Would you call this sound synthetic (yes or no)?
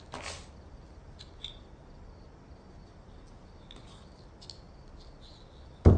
no